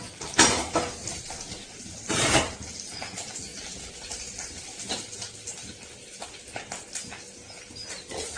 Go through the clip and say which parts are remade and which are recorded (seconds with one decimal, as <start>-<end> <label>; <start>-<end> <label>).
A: 0.0-1.1 recorded; 1.1-2.6 remade; 2.6-3.5 recorded; 3.5-5.1 remade; 5.1-5.5 recorded; 5.5-7.7 remade; 7.7-8.4 recorded